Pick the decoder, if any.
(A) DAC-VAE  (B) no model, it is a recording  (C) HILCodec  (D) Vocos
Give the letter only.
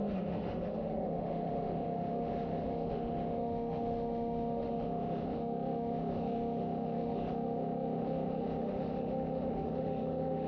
A